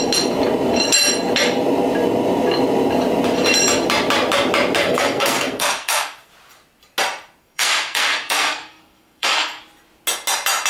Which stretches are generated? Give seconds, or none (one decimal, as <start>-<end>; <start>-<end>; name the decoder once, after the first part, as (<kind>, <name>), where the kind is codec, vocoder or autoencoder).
4.8-6.3 (codec, SNAC); 7.4-9.6